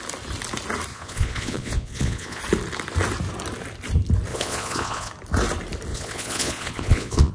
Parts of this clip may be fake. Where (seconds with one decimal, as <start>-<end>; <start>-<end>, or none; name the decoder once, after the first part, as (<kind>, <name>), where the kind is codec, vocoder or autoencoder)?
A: 0.9-2.4 (vocoder, Vocos); 4.3-5.1; 5.9-7.3